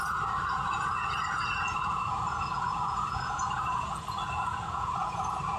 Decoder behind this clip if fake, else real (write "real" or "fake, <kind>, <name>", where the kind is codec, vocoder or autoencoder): fake, vocoder, Vocos